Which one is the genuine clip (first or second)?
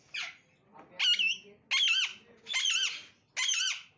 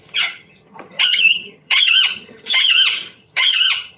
first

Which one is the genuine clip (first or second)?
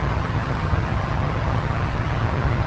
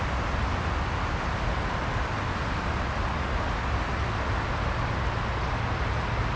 second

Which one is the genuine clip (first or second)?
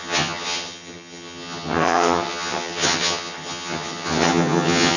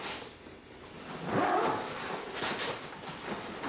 second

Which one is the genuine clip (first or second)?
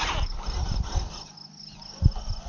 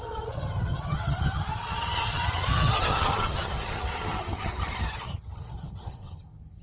first